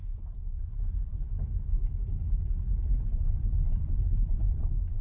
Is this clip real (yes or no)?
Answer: no